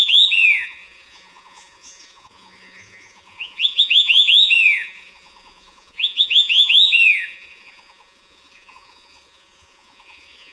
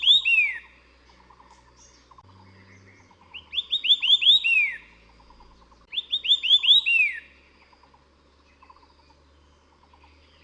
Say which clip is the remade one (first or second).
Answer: first